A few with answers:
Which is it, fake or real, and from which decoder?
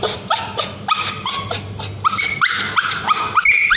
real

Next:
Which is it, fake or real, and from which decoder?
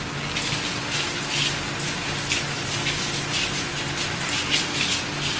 real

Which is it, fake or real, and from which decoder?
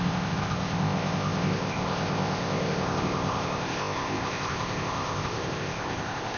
fake, codec, ZipCodec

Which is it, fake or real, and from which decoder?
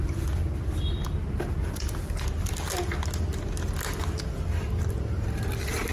real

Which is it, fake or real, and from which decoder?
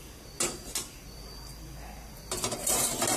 real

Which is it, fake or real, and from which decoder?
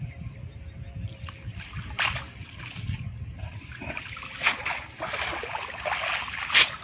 real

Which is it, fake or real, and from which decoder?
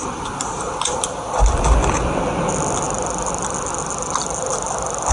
real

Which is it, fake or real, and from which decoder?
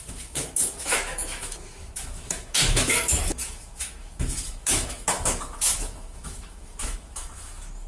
fake, autoencoder, DAC-VAE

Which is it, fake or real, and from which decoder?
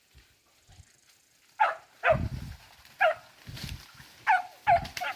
real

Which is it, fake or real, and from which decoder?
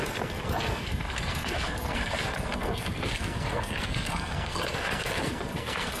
fake, codec, SNAC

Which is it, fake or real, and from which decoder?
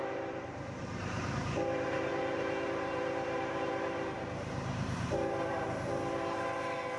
fake, vocoder, BigVGAN v2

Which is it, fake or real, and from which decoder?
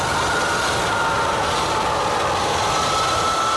real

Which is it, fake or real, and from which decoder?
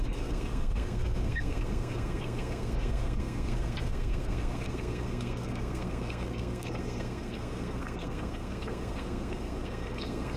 fake, codec, SNAC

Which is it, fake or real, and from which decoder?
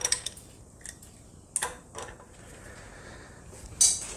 real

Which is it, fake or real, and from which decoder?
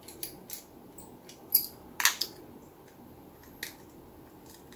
real